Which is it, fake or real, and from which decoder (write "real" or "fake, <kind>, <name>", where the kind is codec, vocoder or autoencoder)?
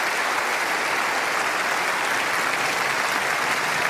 real